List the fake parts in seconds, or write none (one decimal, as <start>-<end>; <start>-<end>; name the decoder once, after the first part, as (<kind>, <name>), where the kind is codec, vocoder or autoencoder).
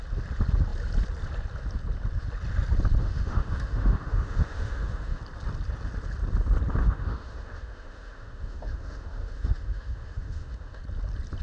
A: 3.0-5.2 (autoencoder, DAC-VAE); 6.8-10.8